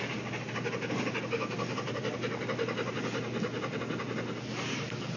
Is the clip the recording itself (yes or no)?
yes